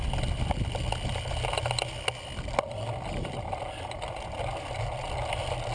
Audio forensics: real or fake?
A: real